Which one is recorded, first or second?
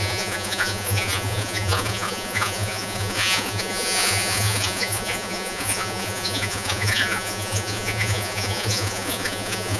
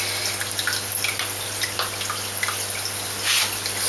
second